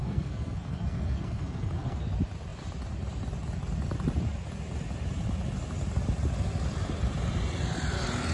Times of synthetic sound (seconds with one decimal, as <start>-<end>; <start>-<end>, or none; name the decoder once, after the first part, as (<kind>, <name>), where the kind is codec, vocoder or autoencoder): 0.0-2.0 (codec, SNAC)